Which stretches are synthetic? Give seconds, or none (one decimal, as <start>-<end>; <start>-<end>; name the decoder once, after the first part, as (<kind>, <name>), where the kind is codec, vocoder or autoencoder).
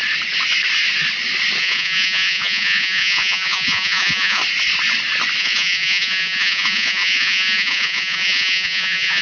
1.6-4.4 (vocoder, Vocos); 5.4-9.2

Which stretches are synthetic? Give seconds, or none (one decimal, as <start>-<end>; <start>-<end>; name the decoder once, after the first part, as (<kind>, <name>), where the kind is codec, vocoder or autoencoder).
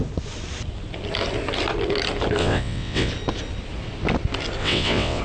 2.4-3.1 (vocoder, WaveNeXt); 4.6-5.2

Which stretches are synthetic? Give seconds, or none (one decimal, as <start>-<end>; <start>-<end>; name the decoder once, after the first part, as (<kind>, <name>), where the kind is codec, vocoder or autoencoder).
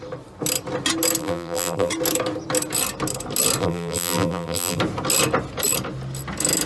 1.2-1.9 (vocoder, BigVGAN v2); 3.6-4.8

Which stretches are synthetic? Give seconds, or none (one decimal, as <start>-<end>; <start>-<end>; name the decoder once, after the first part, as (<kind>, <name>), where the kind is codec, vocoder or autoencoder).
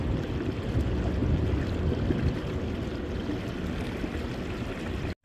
none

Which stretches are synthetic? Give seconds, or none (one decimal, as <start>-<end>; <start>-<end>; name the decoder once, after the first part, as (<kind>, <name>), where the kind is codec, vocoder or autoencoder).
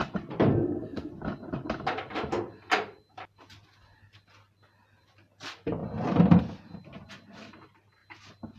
0.5-1.1 (codec, SNAC)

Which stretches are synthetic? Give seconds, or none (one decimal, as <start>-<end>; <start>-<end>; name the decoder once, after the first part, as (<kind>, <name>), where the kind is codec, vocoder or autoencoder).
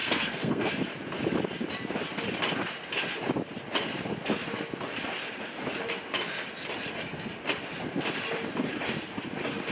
0.0-0.7 (codec, SNAC)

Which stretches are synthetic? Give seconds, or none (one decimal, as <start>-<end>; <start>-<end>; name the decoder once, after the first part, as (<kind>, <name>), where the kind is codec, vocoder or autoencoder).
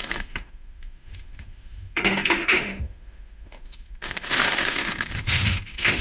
0.0-6.0 (autoencoder, DAC-VAE)